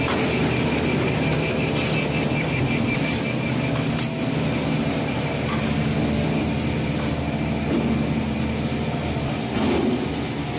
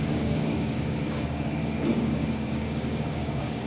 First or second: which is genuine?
first